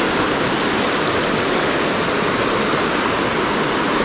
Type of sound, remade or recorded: recorded